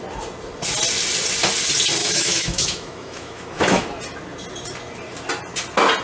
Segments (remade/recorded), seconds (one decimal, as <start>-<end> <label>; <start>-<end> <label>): 0.0-2.0 recorded; 2.0-3.9 remade; 3.9-6.0 recorded